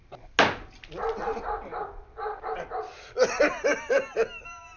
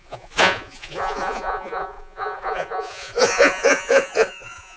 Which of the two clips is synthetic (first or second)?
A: second